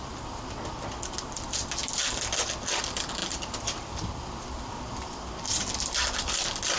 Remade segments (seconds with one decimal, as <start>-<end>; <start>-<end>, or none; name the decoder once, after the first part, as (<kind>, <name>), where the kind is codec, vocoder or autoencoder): 3.2-5.6 (vocoder, BigVGAN v2)